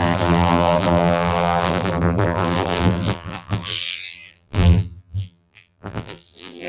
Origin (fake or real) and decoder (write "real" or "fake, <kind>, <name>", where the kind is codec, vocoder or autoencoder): fake, vocoder, BigVGAN v2